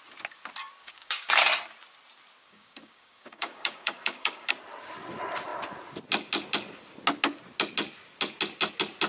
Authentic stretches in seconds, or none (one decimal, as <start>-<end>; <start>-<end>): 0.0-0.8; 1.3-2.4; 4.5-9.1